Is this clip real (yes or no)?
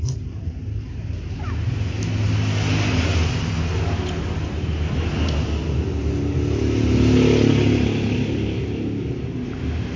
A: yes